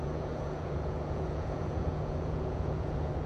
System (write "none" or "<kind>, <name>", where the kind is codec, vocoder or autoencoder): vocoder, Vocos